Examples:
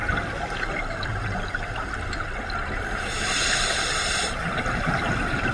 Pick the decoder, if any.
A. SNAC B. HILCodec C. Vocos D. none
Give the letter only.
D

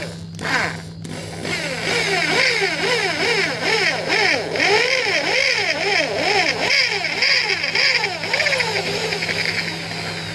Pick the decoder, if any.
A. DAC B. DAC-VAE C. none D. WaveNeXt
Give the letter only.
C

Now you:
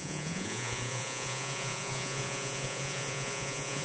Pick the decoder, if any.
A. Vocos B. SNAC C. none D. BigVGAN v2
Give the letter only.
A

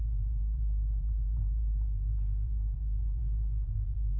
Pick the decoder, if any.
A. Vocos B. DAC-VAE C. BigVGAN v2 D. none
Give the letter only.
C